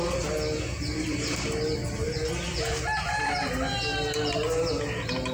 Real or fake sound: real